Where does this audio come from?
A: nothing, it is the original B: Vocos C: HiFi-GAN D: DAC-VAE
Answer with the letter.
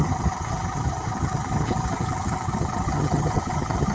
C